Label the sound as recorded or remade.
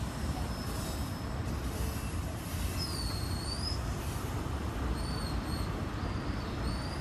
remade